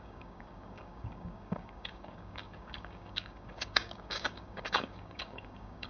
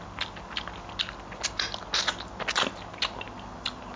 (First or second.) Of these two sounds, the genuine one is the second